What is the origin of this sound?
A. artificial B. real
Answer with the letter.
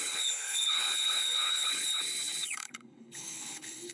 A